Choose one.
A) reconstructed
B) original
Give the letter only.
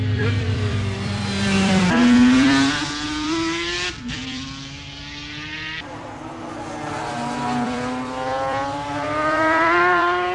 A